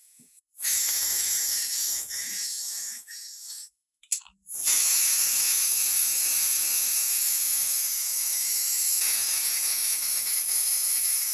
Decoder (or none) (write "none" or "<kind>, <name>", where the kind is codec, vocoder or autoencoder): autoencoder, DAC-VAE